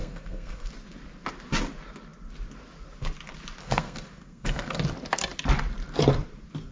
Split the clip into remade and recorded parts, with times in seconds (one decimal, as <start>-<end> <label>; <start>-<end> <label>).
0.0-0.7 remade; 0.7-3.6 recorded; 3.6-4.8 remade; 4.8-6.7 recorded